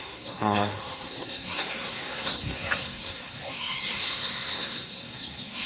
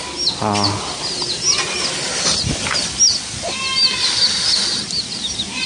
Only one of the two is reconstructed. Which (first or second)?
first